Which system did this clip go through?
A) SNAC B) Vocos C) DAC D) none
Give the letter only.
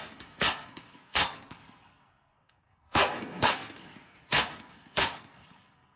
A